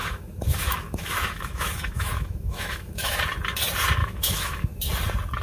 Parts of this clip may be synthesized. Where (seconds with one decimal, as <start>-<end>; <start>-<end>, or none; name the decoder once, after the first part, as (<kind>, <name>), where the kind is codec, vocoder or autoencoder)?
0.0-3.2 (autoencoder, DAC-VAE); 4.0-4.9